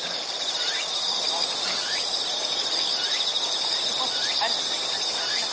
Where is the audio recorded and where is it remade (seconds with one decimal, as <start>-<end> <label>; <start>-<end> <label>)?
0.0-5.5 recorded